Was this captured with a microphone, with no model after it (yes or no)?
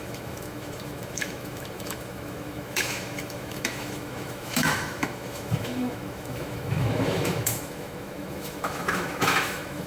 no